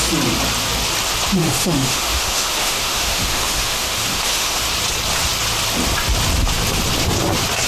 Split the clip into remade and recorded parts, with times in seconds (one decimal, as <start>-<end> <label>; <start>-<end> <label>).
0.0-1.4 recorded; 1.4-4.7 remade; 4.7-7.7 recorded